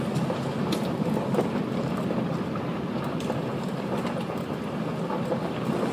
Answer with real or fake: real